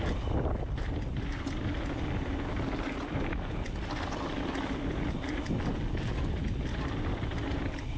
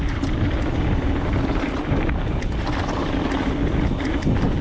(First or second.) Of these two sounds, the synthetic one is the second